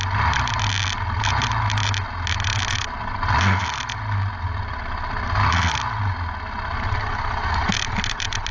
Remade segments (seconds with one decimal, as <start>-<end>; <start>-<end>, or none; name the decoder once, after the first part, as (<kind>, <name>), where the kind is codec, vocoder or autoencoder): none